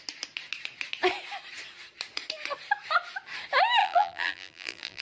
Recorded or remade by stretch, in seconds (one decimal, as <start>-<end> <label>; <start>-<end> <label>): 0.0-3.8 recorded; 3.8-5.0 remade